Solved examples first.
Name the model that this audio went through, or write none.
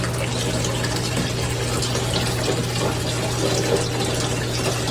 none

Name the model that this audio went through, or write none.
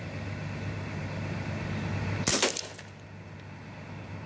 none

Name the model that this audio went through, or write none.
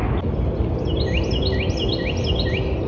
none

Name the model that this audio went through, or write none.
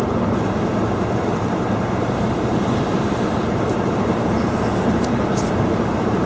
vocoder, BigVGAN v2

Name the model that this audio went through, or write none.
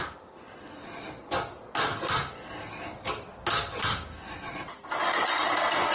none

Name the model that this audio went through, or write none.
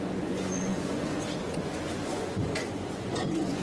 vocoder, Vocos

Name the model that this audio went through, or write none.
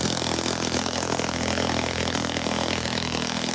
codec, SNAC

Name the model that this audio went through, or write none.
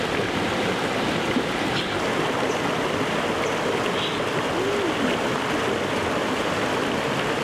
none